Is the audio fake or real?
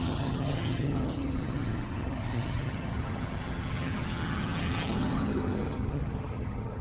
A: fake